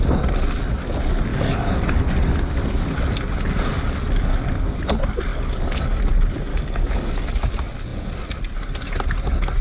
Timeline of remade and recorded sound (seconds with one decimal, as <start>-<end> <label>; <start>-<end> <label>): 0.0-1.3 recorded; 1.3-1.8 remade; 1.8-5.3 recorded; 5.3-6.0 remade; 6.0-6.5 recorded; 6.5-7.4 remade; 7.4-9.6 recorded

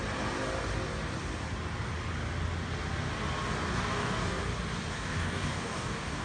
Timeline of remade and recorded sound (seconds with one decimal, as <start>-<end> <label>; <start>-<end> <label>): 0.0-3.7 recorded; 3.7-4.4 remade; 4.4-4.9 recorded; 4.9-6.2 remade

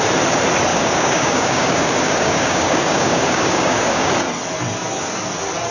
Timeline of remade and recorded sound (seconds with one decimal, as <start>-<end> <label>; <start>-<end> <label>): 0.0-0.7 recorded; 0.7-4.1 remade; 4.1-5.7 recorded

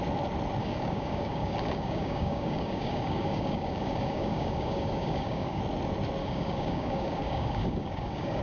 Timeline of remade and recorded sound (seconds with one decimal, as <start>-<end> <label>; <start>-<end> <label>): 0.0-0.6 recorded; 0.6-5.6 remade; 5.6-6.2 recorded; 6.2-8.4 remade

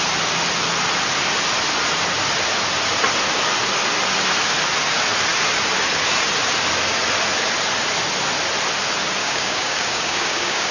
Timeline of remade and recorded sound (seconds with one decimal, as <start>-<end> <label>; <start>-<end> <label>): 0.0-9.2 recorded; 9.2-10.7 remade